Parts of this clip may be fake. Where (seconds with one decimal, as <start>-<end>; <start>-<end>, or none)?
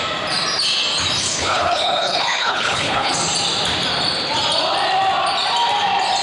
1.2-3.1